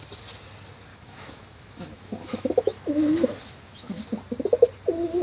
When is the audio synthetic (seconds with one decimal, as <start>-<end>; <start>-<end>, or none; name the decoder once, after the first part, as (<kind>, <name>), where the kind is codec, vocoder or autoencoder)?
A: 0.9-4.0 (autoencoder, DAC-VAE)